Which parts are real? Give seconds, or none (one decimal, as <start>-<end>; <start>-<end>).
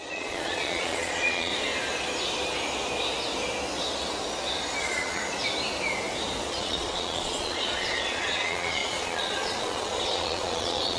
1.5-4.8; 5.2-6.5